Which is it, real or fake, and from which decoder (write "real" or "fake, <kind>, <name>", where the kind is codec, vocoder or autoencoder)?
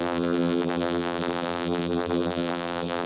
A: fake, vocoder, BigVGAN v2